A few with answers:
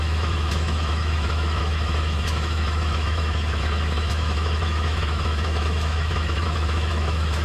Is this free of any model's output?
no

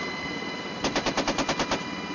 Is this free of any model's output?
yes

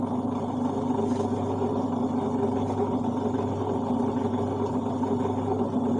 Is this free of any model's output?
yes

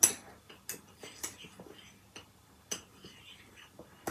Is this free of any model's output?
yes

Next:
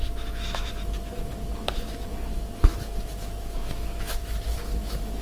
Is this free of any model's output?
no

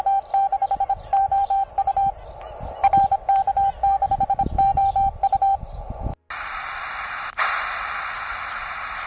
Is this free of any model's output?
yes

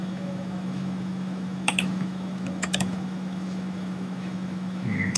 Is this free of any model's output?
no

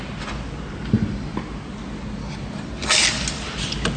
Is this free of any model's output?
yes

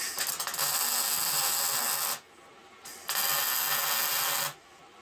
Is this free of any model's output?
yes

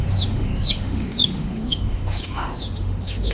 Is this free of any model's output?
no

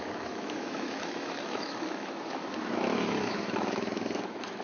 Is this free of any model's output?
no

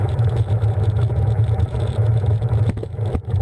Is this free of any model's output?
no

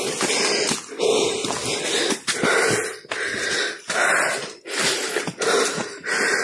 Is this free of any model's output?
yes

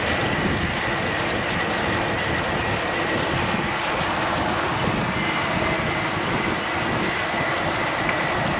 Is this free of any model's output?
yes